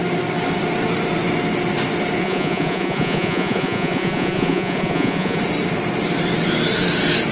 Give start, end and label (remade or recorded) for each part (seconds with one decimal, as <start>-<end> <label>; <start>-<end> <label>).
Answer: 0.0-2.2 recorded; 2.2-5.4 remade; 5.4-7.3 recorded